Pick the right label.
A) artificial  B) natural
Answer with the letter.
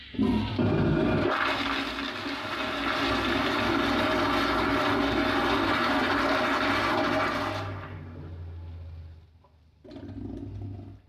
B